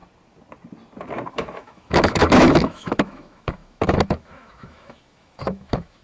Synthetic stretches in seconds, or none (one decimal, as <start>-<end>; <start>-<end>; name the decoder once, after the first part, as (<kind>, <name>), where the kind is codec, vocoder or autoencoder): 1.3-6.0 (autoencoder, DAC-VAE)